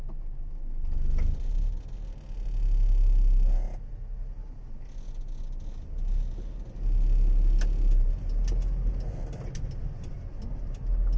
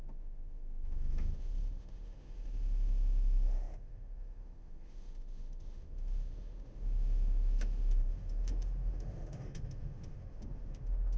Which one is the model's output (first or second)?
second